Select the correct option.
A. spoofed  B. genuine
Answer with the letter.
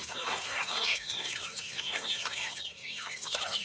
A